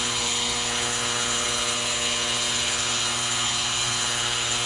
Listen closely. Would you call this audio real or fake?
fake